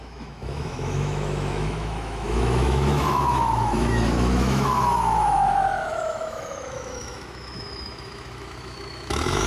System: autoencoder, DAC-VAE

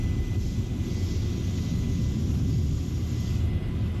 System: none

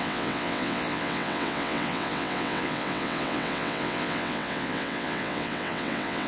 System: vocoder, WaveNeXt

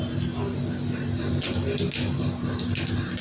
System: none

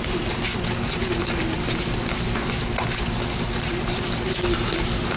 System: none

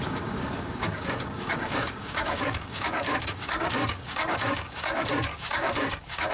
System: codec, DAC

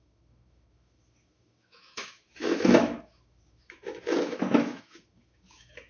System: autoencoder, DAC-VAE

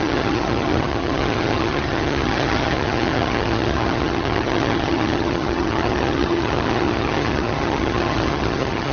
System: vocoder, HiFi-GAN